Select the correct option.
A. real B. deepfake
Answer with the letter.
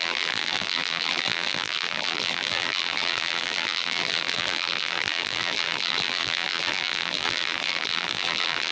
B